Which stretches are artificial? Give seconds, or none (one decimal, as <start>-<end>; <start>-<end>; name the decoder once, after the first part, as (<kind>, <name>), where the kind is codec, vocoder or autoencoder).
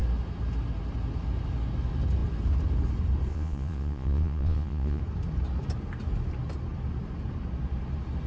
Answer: 3.3-5.0 (vocoder, Vocos)